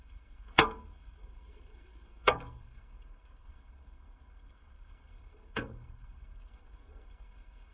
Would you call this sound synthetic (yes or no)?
yes